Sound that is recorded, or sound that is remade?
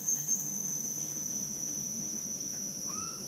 remade